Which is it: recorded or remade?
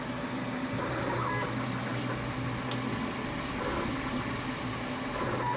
recorded